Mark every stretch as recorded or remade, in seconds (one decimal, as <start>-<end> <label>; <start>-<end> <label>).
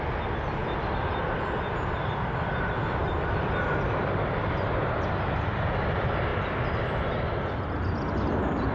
0.0-8.7 recorded